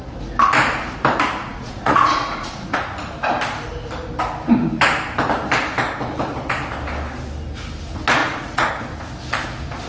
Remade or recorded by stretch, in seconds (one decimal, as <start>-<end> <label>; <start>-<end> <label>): 0.0-1.4 recorded; 1.4-3.1 remade; 3.1-8.2 recorded; 8.2-8.7 remade; 8.7-9.9 recorded